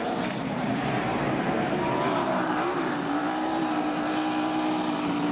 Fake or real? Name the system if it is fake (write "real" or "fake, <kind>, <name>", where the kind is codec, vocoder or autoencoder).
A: fake, vocoder, BigVGAN v2